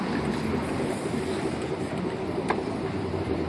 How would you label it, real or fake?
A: fake